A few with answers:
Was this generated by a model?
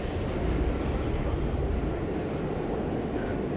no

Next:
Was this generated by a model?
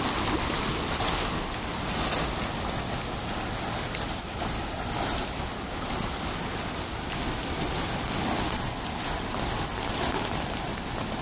no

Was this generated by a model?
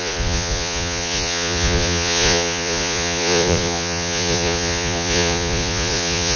yes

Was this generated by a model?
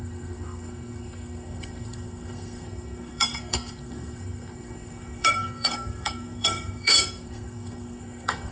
yes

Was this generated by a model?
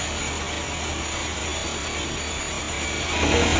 no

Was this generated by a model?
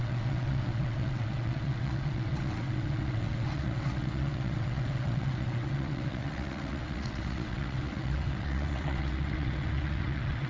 yes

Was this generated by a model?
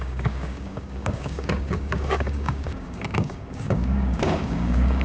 yes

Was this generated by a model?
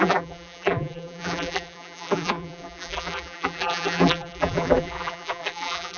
yes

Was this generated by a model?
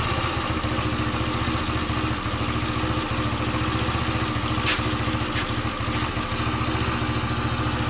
no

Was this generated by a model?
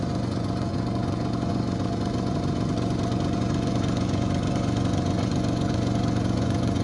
yes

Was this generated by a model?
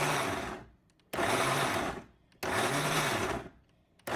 no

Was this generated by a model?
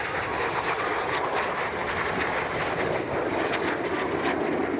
yes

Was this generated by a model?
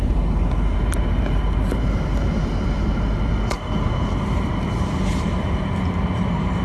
yes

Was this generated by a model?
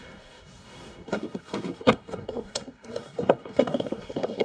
yes